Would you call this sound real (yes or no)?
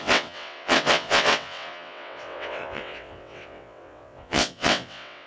no